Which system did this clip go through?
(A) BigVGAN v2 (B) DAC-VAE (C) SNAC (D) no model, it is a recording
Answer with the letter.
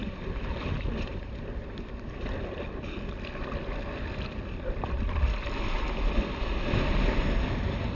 D